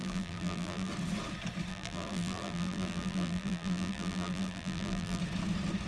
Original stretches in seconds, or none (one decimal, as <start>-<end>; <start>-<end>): 0.9-1.7; 5.2-5.9